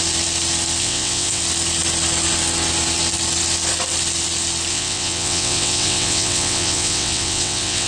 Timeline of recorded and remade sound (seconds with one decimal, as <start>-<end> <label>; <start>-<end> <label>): 0.0-0.8 recorded; 0.8-1.4 remade; 1.4-4.7 recorded; 4.7-7.9 remade